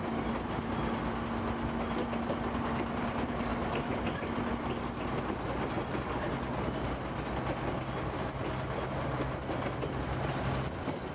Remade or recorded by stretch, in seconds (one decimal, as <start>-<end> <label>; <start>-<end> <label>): 0.0-3.5 recorded; 3.5-4.5 remade; 4.5-11.1 recorded